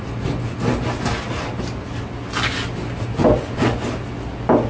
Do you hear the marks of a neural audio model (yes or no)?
no